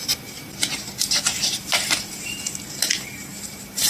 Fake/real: fake